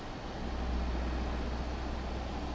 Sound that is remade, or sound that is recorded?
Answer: recorded